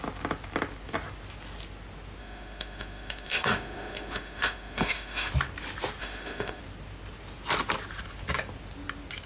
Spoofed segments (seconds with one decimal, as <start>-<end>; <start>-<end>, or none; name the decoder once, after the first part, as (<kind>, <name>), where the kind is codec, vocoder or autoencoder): 2.2-5.3 (autoencoder, DAC-VAE); 6.0-6.6